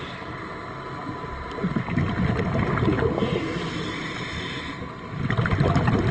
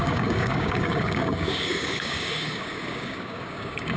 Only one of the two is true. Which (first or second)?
first